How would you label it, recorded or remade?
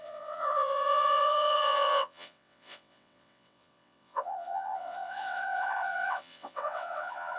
remade